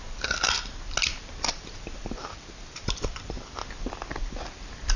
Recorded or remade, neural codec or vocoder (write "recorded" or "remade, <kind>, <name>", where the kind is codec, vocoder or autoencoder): recorded